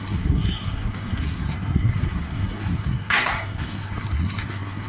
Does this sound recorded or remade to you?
remade